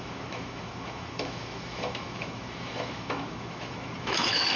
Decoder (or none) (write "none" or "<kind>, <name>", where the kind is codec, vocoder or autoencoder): autoencoder, DAC-VAE